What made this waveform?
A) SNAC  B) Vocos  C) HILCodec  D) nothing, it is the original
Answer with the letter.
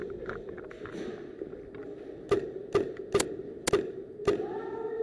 D